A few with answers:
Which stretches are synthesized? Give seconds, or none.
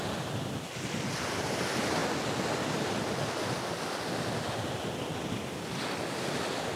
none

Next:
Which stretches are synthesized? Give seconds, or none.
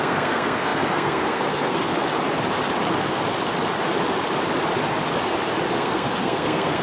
0.0-1.9 (codec, SNAC); 5.7-6.8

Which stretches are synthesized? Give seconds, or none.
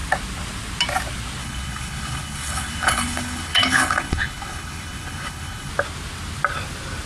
1.4-5.7 (codec, HILCodec)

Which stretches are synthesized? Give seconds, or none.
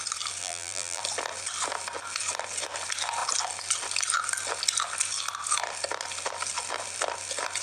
0.4-1.0 (vocoder, BigVGAN v2)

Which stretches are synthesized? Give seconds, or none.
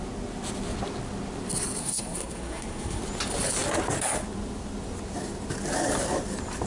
1.8-3.0 (codec, SNAC)